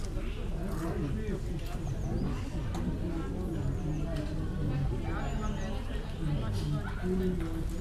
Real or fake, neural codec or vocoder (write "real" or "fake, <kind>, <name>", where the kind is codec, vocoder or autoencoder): real